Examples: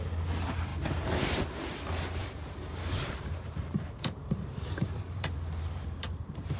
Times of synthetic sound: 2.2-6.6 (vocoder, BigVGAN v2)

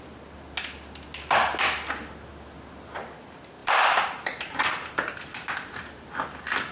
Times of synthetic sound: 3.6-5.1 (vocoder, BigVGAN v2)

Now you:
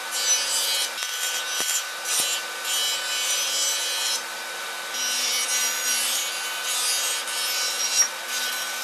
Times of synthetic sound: 5.6-6.2 (vocoder, BigVGAN v2)

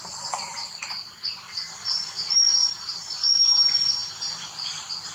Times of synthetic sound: none

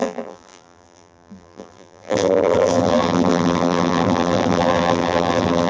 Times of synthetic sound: 0.0-5.7 (vocoder, BigVGAN v2)